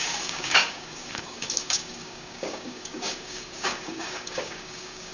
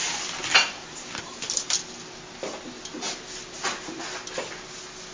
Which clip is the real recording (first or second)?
second